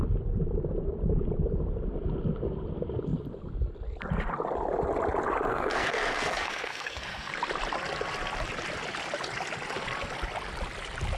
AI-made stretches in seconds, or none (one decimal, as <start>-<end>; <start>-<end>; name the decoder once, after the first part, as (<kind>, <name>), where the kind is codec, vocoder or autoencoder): 5.5-7.3 (codec, SNAC)